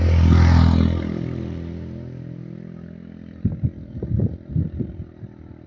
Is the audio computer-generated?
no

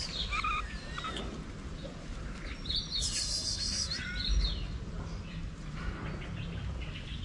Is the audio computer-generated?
no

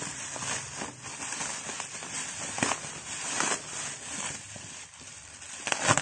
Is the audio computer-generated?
no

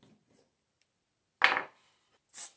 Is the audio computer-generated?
no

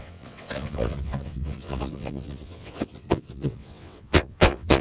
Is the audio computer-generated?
yes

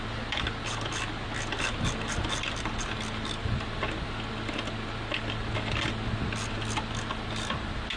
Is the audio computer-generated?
no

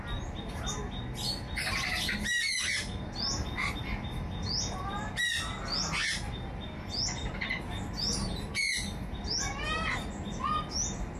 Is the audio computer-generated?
no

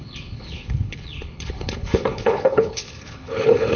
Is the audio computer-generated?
yes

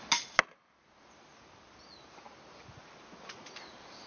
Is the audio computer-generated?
no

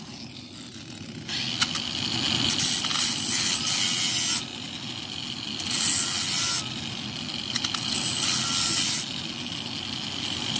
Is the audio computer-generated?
no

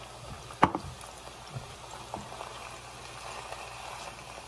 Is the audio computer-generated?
no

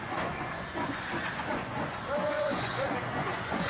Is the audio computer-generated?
yes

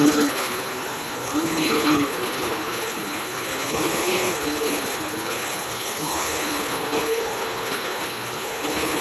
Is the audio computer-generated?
yes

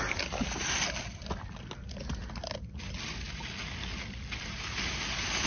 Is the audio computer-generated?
no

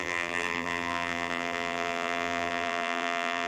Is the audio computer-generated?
yes